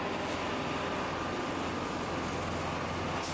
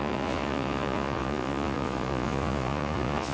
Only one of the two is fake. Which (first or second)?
second